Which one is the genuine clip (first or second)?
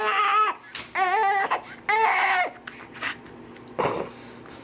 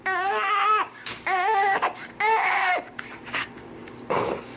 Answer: first